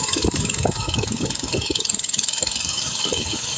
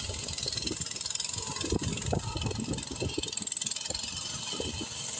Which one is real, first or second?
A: second